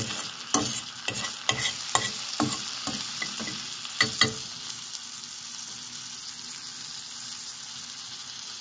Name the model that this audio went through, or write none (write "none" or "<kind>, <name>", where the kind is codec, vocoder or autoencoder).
none